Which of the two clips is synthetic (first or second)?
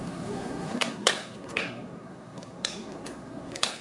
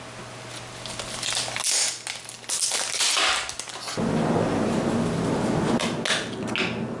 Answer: first